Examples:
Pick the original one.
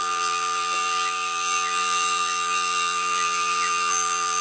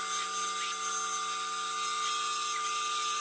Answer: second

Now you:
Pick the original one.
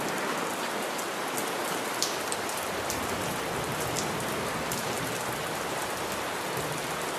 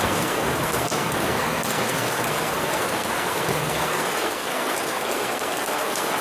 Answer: first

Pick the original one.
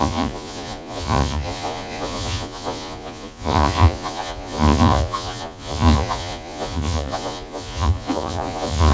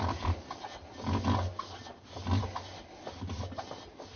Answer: second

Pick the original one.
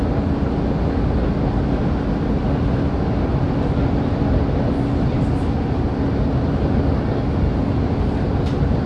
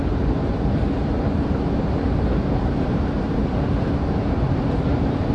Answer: first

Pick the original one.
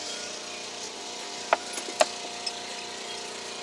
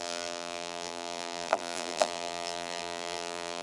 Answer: first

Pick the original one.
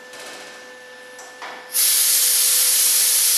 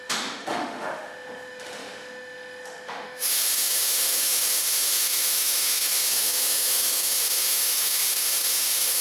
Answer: first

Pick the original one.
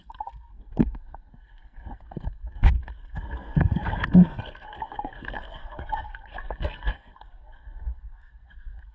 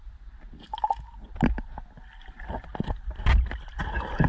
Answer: second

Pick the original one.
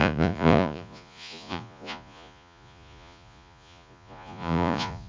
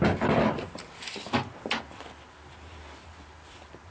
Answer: second